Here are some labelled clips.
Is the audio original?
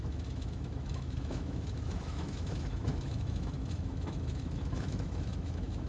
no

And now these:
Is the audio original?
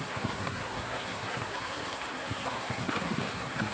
no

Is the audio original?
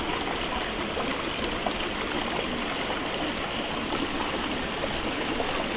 yes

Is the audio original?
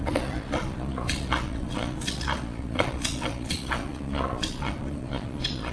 no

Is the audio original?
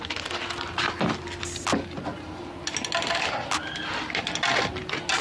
yes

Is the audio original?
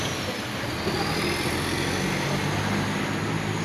yes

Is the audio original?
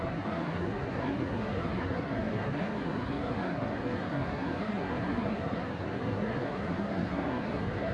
no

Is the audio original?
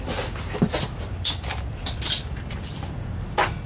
yes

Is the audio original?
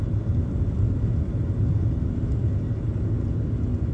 yes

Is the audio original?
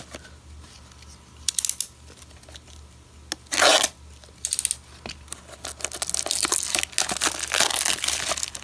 yes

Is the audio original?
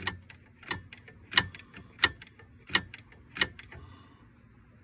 yes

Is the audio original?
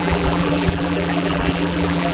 no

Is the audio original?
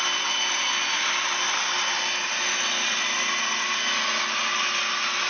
yes